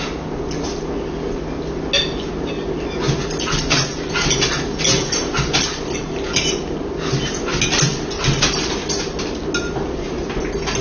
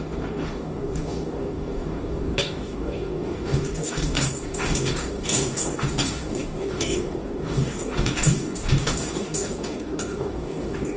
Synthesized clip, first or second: second